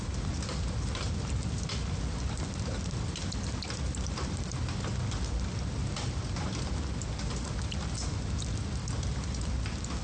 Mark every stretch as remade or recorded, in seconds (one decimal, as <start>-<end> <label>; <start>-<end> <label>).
0.0-10.0 recorded